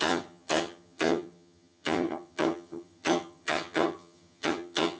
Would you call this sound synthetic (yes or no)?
yes